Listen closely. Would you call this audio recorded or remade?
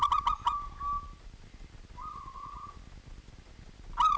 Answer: recorded